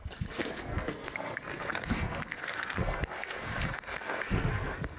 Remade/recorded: remade